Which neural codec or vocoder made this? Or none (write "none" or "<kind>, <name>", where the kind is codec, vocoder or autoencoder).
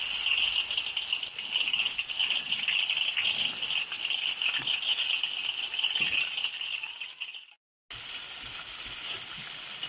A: none